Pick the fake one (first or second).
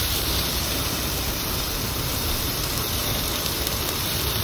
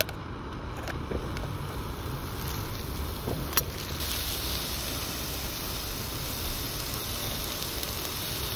first